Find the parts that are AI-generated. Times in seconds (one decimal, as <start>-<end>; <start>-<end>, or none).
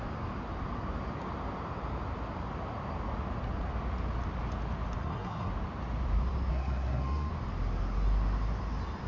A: 5.0-5.5; 6.5-7.3